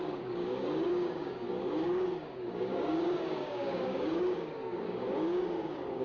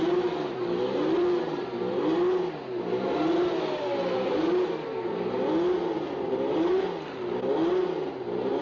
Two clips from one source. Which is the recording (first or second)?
second